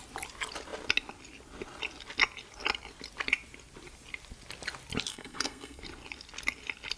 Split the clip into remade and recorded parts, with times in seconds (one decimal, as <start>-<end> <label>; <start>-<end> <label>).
0.0-5.1 recorded; 5.1-5.8 remade; 5.8-7.0 recorded